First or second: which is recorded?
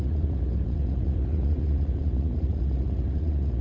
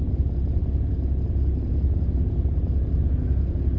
second